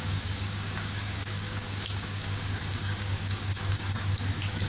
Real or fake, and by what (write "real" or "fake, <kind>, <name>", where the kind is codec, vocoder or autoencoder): fake, codec, DAC